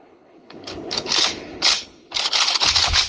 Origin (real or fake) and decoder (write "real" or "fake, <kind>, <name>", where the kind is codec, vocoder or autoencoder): fake, codec, HILCodec